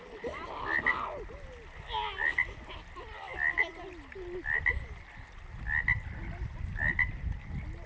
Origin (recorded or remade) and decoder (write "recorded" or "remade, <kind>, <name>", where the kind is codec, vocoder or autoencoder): recorded